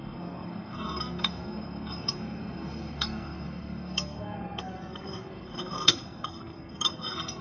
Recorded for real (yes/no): no